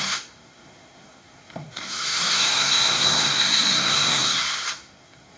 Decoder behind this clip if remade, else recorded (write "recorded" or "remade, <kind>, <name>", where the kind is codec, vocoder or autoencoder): remade, codec, SNAC